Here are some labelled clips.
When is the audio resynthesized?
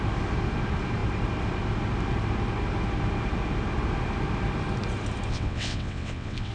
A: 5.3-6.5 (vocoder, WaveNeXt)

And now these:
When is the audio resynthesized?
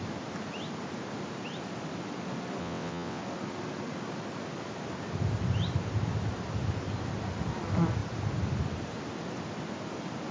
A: 2.6-3.2 (vocoder, WaveNeXt)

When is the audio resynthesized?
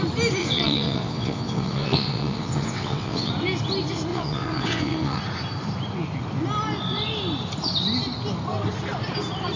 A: 0.4-3.3 (vocoder, WaveNeXt); 4.1-5.2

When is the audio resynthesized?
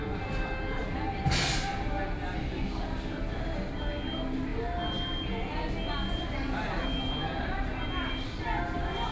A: none